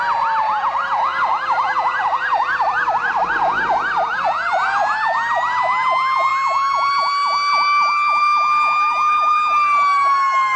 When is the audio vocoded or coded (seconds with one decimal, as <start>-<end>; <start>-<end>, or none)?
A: 1.1-3.3

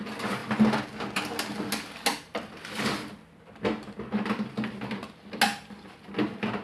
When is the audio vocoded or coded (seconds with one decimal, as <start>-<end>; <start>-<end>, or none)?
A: none